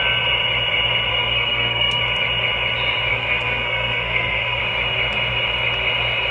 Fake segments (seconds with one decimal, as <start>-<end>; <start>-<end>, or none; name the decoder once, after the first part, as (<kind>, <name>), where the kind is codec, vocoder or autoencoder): 1.1-2.0 (codec, SNAC); 3.1-4.6

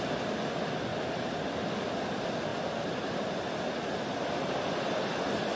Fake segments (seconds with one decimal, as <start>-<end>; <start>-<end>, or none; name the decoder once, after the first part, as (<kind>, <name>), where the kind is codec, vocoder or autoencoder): none

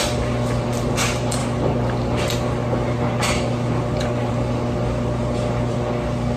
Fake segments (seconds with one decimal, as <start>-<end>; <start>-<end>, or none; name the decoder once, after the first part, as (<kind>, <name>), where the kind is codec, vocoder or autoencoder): none